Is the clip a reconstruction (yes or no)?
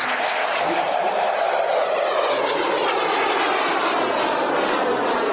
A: no